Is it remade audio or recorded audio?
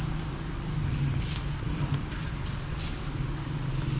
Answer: recorded